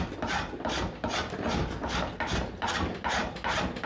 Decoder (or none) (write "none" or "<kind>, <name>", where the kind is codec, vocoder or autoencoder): none